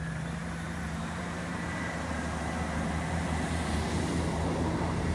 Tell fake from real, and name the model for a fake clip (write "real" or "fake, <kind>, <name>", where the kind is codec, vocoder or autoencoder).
fake, vocoder, BigVGAN v2